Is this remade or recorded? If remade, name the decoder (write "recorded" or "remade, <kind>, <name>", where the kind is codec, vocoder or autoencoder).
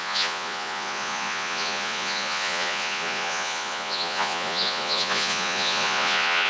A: remade, vocoder, Vocos